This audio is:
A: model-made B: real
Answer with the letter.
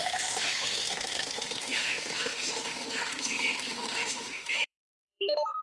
A